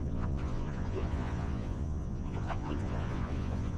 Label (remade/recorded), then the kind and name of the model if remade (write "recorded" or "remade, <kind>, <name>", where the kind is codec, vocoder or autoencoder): remade, vocoder, Vocos